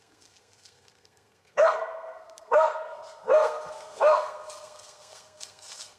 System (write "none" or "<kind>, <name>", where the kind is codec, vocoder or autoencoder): codec, SNAC